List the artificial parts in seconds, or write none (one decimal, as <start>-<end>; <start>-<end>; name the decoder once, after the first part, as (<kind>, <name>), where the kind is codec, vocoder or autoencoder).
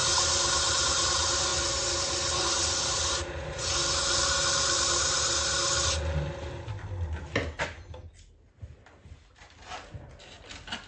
none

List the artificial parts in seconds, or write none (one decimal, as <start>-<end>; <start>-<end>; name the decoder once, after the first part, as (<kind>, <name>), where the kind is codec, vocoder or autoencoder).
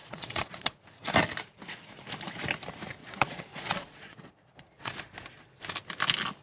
0.0-0.8 (vocoder, Vocos); 3.0-4.9